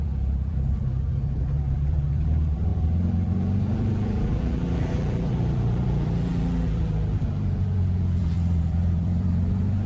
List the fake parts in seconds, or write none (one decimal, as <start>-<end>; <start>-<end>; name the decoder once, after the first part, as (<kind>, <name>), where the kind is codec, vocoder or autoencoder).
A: 0.0-9.9 (vocoder, BigVGAN v2)